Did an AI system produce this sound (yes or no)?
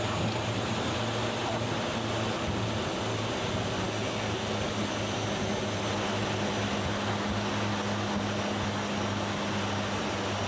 no